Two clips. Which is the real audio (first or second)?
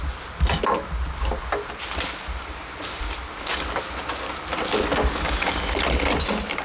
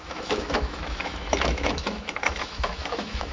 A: first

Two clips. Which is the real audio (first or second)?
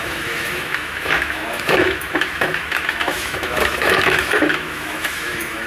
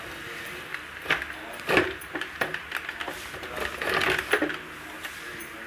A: second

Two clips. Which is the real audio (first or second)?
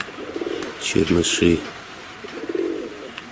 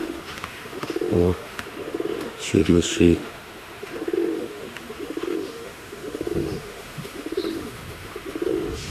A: first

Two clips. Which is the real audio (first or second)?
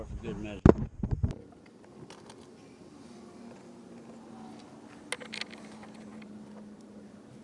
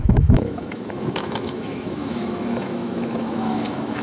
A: first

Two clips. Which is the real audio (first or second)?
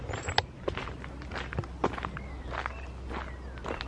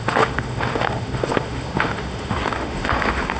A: first